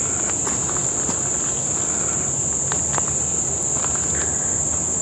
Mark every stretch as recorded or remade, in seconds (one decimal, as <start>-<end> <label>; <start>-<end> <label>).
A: 0.0-5.0 recorded